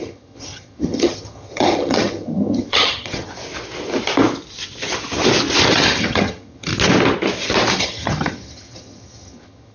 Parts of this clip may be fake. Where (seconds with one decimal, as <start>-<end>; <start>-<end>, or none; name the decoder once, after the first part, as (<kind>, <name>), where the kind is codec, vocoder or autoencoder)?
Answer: 0.0-3.3 (vocoder, HiFi-GAN); 5.7-6.7; 7.8-9.7